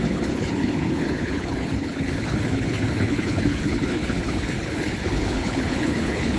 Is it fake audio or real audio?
fake